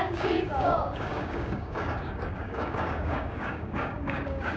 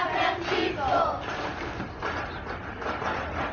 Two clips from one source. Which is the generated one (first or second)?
first